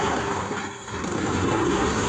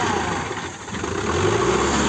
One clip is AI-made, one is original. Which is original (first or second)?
second